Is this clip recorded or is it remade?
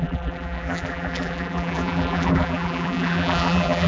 remade